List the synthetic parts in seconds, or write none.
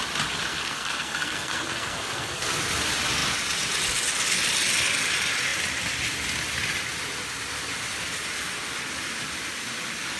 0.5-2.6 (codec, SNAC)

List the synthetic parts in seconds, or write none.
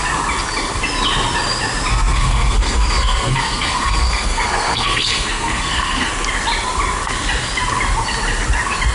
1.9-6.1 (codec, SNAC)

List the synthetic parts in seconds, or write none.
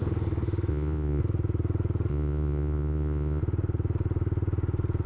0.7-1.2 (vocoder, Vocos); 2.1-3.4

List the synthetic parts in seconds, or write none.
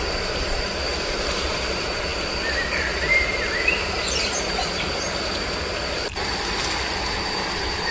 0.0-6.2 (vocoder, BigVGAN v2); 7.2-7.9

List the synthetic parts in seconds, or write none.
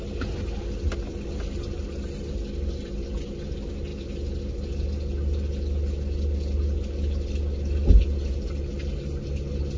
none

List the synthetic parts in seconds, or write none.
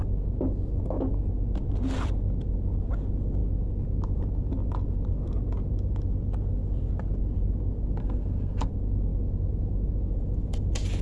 8.0-8.7 (codec, SNAC)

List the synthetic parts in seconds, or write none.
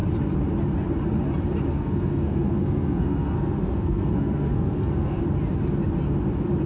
1.7-5.2 (codec, SNAC)